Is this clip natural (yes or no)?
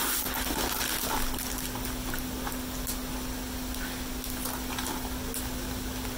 yes